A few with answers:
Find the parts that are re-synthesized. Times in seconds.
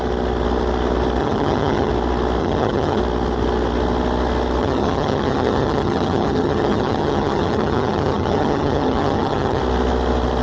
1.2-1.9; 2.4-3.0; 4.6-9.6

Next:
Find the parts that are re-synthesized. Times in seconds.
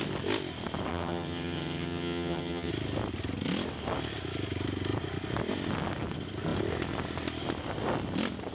0.9-2.7